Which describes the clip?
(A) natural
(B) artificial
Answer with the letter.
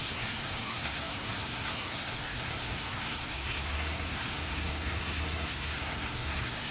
B